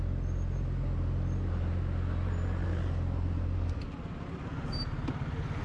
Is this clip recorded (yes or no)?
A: yes